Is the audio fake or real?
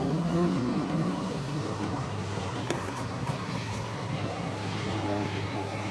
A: fake